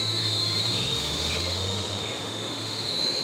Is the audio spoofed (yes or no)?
yes